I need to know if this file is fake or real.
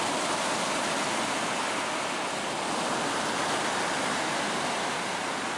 real